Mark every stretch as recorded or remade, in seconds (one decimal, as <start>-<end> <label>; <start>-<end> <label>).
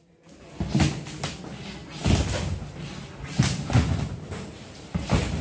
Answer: 0.0-5.4 recorded